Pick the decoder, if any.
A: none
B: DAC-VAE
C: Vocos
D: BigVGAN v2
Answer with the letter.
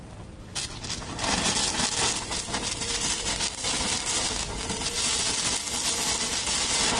A